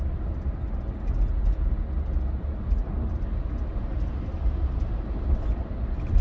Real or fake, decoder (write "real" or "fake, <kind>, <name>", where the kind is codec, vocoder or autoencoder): real